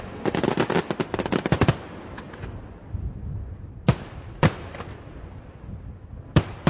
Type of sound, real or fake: real